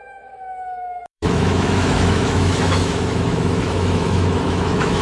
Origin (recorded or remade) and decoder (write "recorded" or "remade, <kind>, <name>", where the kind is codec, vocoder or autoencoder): remade, autoencoder, DAC-VAE